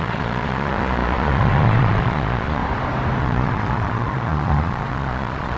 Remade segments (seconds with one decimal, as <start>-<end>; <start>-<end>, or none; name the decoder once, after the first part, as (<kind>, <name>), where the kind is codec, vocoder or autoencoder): 0.0-2.6 (vocoder, Vocos); 3.2-5.6